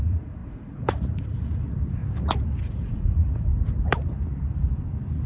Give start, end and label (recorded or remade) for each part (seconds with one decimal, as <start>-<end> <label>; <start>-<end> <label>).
0.0-2.0 remade; 2.0-2.6 recorded; 2.6-3.5 remade; 3.5-5.3 recorded